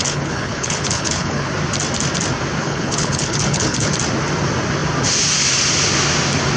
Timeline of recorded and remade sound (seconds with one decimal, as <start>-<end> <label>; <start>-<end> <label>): 0.0-1.5 remade; 1.5-2.6 recorded; 2.6-3.9 remade; 3.9-6.6 recorded